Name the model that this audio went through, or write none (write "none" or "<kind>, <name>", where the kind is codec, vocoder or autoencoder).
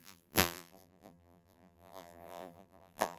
vocoder, BigVGAN v2